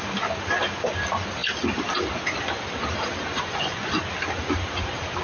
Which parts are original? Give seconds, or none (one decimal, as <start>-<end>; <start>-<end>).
0.0-3.3; 4.0-5.2